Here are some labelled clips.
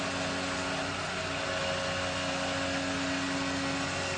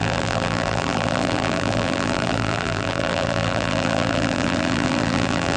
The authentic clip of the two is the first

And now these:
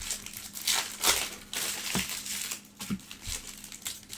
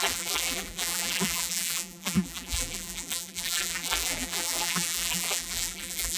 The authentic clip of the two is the first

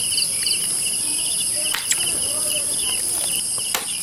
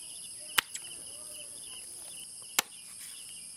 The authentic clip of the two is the second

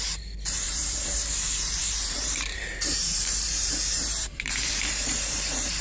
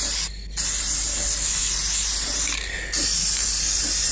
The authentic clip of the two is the second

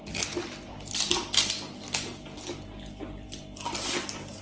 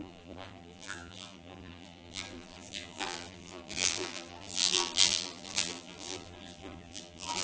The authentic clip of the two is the first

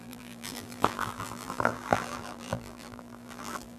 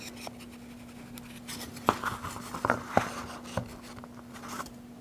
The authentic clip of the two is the second